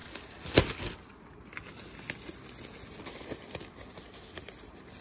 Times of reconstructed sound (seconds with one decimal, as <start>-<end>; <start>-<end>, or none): none